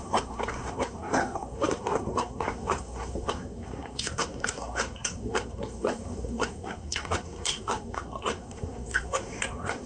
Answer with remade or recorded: remade